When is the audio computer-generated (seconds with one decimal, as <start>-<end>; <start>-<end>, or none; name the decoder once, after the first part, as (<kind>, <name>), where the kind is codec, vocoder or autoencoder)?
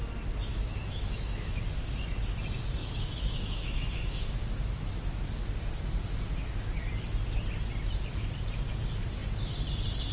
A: 0.5-1.6 (autoencoder, DAC-VAE); 2.8-5.2